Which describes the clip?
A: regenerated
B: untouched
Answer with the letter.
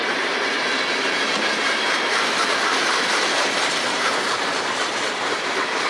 A